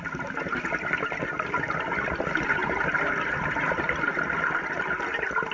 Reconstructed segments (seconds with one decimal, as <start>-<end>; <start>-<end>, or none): none